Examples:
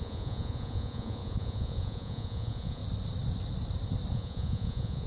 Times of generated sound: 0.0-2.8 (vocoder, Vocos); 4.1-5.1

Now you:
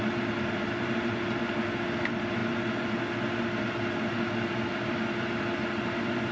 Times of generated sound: none